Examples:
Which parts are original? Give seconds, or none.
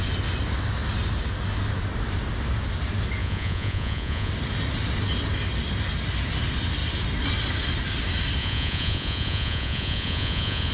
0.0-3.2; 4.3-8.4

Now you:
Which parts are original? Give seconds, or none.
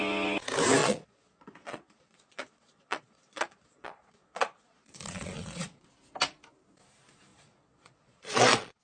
0.0-0.8; 5.9-7.3